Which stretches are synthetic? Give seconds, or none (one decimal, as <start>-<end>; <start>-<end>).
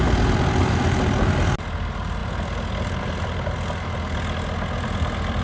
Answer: none